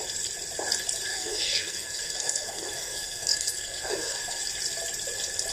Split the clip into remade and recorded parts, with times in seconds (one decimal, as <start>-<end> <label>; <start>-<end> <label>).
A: 0.0-1.1 recorded; 1.1-4.4 remade; 4.4-5.5 recorded